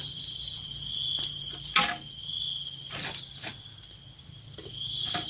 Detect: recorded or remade recorded